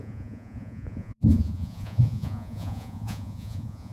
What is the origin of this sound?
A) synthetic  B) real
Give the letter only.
A